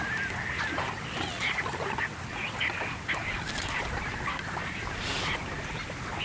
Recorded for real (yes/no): yes